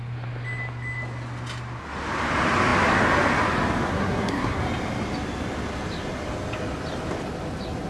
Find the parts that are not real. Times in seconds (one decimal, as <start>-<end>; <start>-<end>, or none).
3.9-4.6